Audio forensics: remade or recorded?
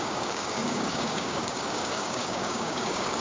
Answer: remade